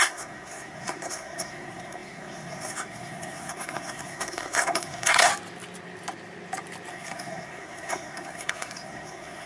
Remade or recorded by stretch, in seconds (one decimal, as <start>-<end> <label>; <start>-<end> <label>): 0.0-5.3 remade; 5.3-6.9 recorded; 6.9-9.5 remade

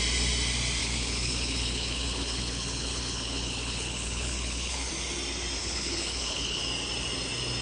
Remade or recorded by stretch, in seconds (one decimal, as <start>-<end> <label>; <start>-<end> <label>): 0.0-0.8 recorded; 0.8-4.9 remade; 4.9-5.6 recorded; 5.6-6.6 remade; 6.6-7.6 recorded

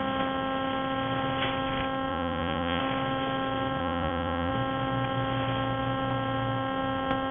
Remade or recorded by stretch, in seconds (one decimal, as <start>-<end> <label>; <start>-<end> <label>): 0.0-2.1 recorded; 2.1-2.8 remade; 2.8-3.8 recorded; 3.8-4.5 remade; 4.5-7.3 recorded

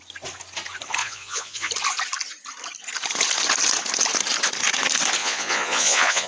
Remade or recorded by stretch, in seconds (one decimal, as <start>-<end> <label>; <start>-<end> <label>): 0.0-1.0 recorded; 1.0-1.7 remade; 1.7-5.2 recorded; 5.2-6.3 remade